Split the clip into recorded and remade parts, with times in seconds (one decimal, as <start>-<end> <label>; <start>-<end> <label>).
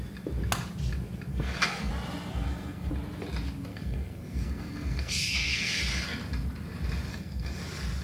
0.0-1.3 recorded; 1.3-1.9 remade; 1.9-2.3 recorded; 2.3-2.9 remade; 2.9-3.7 recorded; 3.7-5.8 remade; 5.8-7.1 recorded; 7.1-7.6 remade; 7.6-8.0 recorded